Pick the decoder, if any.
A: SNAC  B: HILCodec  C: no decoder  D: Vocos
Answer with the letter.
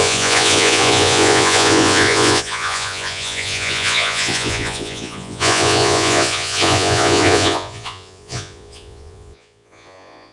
D